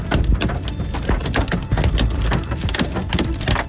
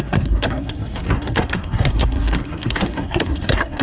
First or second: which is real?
first